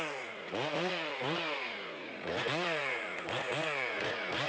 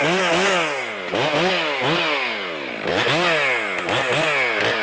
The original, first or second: second